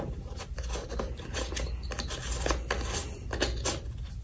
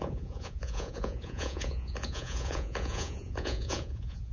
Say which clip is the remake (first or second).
second